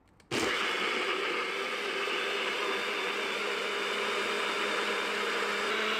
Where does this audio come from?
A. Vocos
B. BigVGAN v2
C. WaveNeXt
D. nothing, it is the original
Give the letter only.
D